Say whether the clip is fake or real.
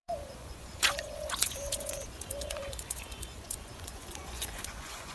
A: fake